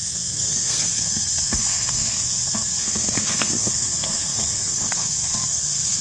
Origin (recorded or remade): remade